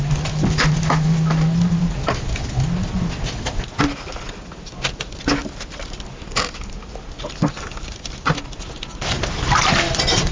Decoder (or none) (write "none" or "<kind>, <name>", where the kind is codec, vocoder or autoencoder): none